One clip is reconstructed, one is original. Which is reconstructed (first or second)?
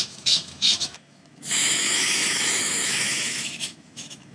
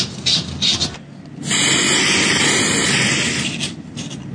first